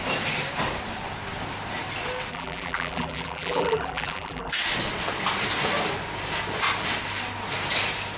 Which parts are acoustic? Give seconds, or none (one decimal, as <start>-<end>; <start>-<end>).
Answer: 0.0-2.3; 4.5-8.2